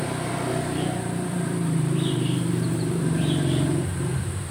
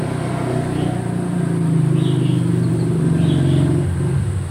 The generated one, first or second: first